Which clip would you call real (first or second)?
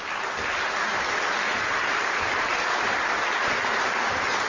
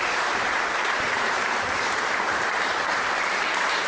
first